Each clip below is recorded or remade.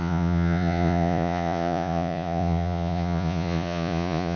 remade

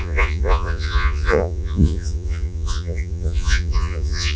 remade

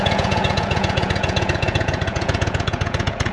remade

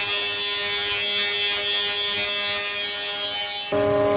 recorded